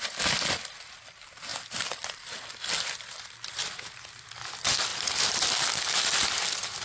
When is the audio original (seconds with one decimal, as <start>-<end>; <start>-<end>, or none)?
0.0-6.8